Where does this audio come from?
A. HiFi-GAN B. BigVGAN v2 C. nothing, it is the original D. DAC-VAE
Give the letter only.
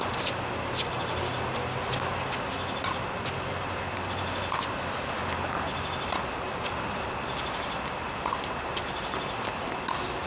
C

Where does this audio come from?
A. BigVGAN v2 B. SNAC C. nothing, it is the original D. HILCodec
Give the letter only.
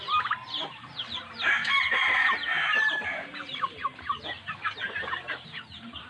A